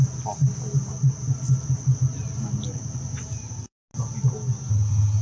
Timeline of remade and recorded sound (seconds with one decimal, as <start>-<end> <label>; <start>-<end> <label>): 0.0-5.2 recorded